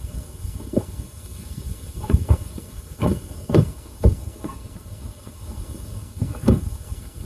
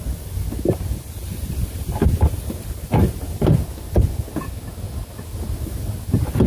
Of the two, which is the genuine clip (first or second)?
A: second